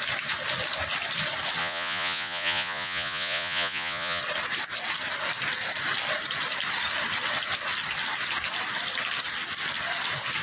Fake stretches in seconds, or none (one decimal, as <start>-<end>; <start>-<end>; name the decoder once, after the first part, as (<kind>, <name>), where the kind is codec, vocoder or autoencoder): 1.6-4.2 (vocoder, Vocos)